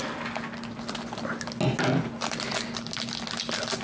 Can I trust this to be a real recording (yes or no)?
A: yes